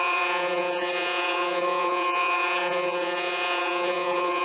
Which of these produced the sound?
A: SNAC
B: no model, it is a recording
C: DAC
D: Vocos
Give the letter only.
D